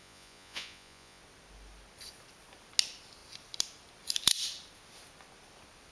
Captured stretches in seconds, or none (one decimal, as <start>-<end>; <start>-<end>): 1.2-5.9